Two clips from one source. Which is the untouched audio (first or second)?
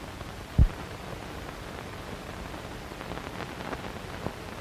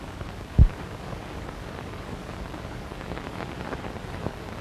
first